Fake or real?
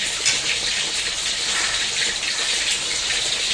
real